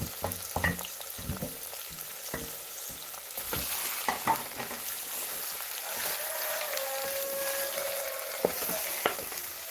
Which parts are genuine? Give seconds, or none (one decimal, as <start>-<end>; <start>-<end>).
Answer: 0.0-9.7